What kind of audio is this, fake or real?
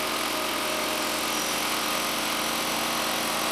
real